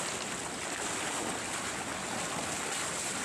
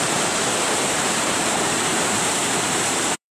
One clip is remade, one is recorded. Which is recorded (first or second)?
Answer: first